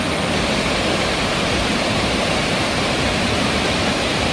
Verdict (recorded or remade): recorded